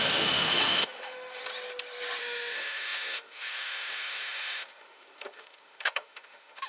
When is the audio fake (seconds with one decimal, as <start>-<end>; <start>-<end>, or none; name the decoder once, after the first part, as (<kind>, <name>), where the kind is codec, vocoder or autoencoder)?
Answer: 0.0-1.4 (autoencoder, DAC-VAE); 2.2-6.7